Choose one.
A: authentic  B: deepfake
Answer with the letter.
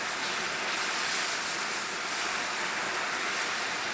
A